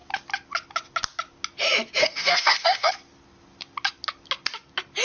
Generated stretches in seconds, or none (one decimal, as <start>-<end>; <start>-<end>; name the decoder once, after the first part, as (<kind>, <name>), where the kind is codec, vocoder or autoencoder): 2.0-2.9 (codec, DAC)